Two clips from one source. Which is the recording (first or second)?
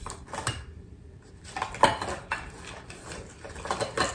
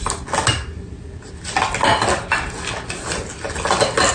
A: second